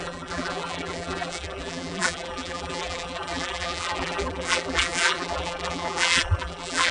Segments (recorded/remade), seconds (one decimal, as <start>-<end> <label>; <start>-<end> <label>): 0.0-6.9 remade